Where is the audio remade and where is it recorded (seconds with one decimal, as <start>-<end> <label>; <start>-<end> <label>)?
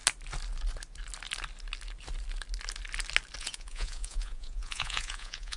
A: 0.0-3.4 recorded; 3.4-5.6 remade